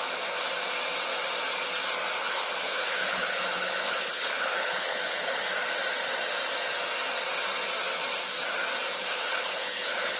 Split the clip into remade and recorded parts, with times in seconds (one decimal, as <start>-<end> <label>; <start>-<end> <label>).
0.0-2.2 recorded; 2.2-5.4 remade; 5.4-8.9 recorded; 8.9-10.2 remade